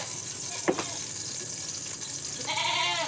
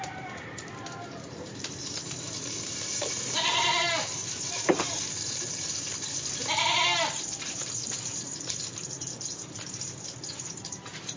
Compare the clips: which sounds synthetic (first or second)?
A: second